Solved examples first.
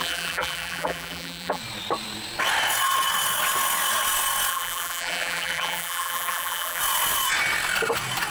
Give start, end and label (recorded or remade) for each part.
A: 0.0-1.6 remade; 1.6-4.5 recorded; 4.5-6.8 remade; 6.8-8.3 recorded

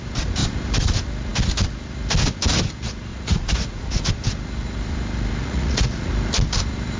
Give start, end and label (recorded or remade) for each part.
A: 0.0-3.1 recorded; 3.1-4.1 remade; 4.1-5.4 recorded; 5.4-6.1 remade; 6.1-7.0 recorded

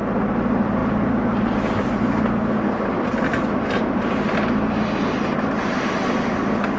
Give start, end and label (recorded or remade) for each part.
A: 0.0-6.8 recorded

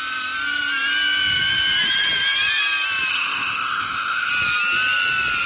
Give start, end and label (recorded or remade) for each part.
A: 0.0-3.1 recorded; 3.1-4.3 remade; 4.3-5.5 recorded

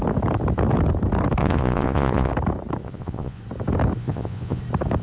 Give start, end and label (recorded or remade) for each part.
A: 0.0-1.4 recorded; 1.4-2.3 remade; 2.3-2.8 recorded; 2.8-3.4 remade; 3.4-4.0 recorded; 4.0-4.6 remade; 4.6-5.0 recorded

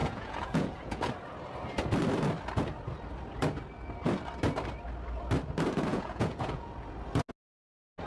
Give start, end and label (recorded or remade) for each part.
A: 0.0-1.1 remade; 1.1-5.9 recorded; 5.9-6.7 remade; 6.7-8.1 recorded

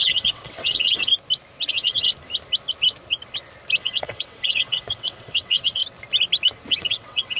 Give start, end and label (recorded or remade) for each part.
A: 0.0-1.1 remade; 1.1-1.7 recorded; 1.7-2.1 remade; 2.1-3.8 recorded; 3.8-5.8 remade; 5.8-6.7 recorded; 6.7-7.4 remade